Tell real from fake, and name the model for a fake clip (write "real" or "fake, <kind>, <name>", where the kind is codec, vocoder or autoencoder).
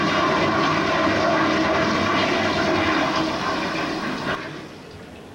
real